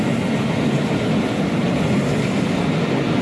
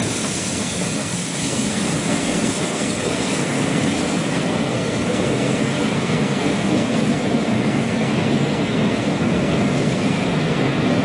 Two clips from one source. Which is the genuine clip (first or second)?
first